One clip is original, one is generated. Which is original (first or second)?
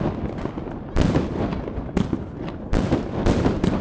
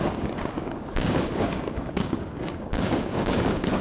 first